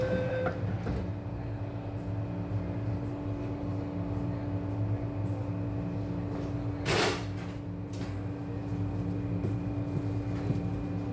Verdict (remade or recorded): recorded